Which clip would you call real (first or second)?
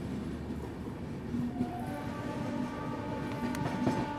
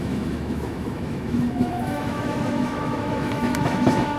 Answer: first